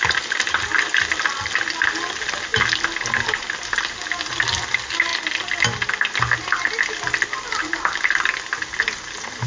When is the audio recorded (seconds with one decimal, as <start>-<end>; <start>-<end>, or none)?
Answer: 0.0-9.5